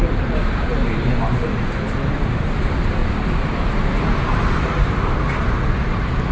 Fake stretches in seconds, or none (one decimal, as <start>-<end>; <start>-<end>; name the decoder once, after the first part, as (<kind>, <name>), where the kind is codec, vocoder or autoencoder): 0.0-3.0 (vocoder, BigVGAN v2); 4.5-6.3

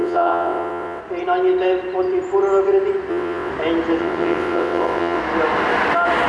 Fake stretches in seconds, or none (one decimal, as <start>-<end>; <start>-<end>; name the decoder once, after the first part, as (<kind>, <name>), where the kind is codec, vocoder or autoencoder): 0.0-1.0 (vocoder, WaveNeXt); 3.1-3.5; 4.0-5.2

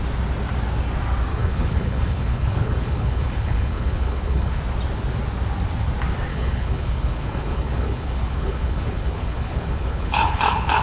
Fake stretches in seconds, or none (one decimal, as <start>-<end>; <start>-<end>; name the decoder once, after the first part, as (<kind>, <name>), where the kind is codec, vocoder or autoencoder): 1.3-4.6 (codec, HILCodec); 6.3-10.8

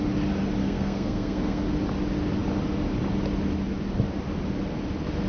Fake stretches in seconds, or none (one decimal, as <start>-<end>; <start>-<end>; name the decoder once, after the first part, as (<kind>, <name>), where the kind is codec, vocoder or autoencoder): 0.6-1.6 (codec, SNAC)

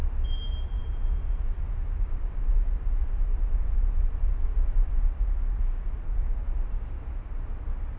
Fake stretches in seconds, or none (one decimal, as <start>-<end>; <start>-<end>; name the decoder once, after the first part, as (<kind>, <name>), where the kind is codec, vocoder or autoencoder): none

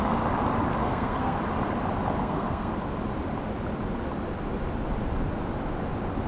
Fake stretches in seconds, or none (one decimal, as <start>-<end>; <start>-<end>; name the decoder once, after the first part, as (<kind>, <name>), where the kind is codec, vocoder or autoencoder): 0.8-1.4 (codec, SNAC); 2.2-2.7

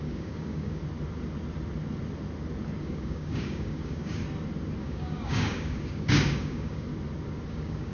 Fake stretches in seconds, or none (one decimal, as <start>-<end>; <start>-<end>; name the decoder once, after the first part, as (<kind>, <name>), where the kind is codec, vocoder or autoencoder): 0.0-0.8 (codec, DAC); 2.8-4.2; 4.8-6.9; 7.5-7.9